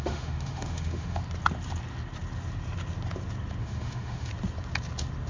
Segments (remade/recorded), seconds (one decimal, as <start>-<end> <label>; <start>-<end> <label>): 0.0-1.2 remade; 1.2-3.6 recorded; 3.6-4.3 remade; 4.3-5.3 recorded